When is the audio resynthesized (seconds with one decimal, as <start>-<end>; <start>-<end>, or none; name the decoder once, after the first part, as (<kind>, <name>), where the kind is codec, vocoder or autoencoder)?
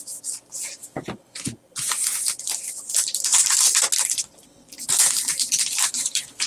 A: none